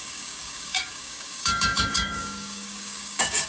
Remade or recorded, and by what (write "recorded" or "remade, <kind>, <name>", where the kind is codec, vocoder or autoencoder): remade, codec, DAC